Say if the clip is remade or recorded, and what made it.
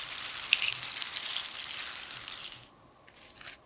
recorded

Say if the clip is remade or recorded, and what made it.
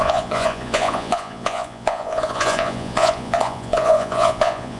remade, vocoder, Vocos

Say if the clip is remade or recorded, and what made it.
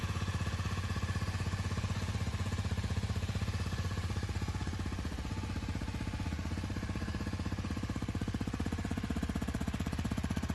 remade, vocoder, Vocos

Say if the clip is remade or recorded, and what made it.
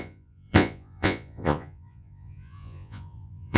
remade, vocoder, Vocos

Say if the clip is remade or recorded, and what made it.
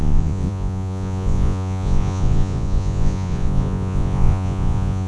remade, vocoder, Vocos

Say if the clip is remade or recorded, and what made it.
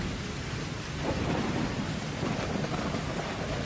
recorded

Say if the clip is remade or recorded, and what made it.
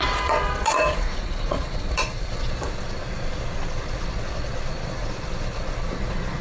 remade, vocoder, Vocos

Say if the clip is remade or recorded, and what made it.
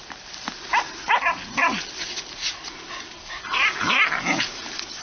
recorded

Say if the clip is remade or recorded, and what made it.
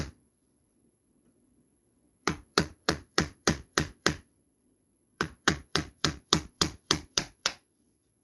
remade, vocoder, Vocos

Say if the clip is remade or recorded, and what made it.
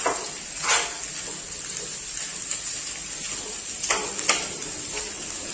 recorded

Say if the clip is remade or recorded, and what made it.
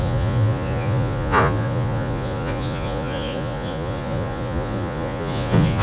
remade, vocoder, Vocos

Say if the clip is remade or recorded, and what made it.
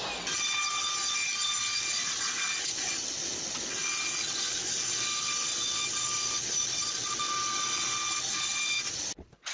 recorded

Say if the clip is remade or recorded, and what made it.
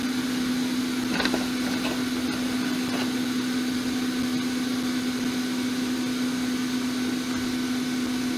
recorded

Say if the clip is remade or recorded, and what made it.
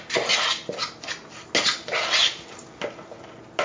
recorded